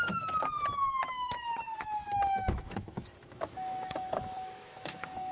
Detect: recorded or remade remade